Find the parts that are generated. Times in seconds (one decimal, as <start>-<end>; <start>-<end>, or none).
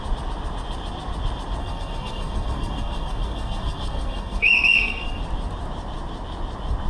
1.6-5.2